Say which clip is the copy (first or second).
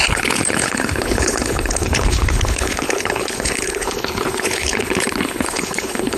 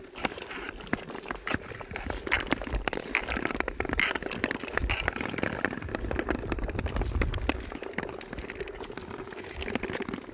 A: first